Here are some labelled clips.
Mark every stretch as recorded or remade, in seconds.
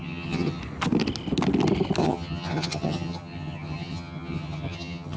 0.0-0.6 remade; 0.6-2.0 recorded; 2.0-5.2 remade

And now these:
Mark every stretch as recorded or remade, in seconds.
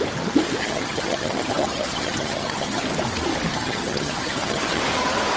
0.0-0.6 recorded; 0.6-2.8 remade; 2.8-3.5 recorded; 3.5-4.8 remade; 4.8-5.4 recorded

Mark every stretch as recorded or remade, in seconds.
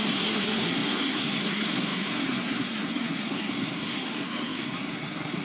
0.0-5.4 remade